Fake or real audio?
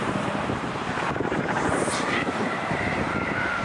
fake